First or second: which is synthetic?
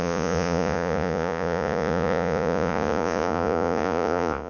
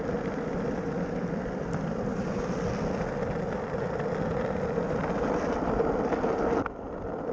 first